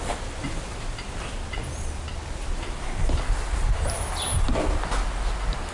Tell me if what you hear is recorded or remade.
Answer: recorded